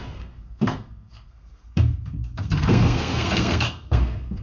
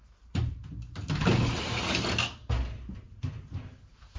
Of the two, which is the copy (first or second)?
first